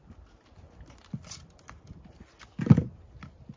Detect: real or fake real